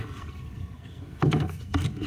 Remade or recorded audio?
remade